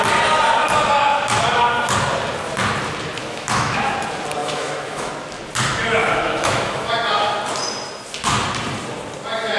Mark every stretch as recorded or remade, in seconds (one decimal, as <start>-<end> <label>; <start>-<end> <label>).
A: 0.0-3.2 recorded; 3.2-3.9 remade; 3.9-4.4 recorded; 4.4-5.1 remade; 5.1-6.0 recorded; 6.0-6.9 remade; 6.9-9.6 recorded